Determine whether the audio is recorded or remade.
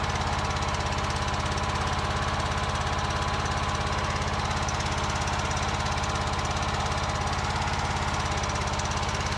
recorded